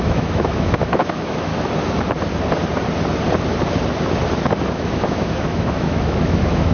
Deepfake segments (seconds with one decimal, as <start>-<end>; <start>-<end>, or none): 0.0-1.5; 4.7-6.7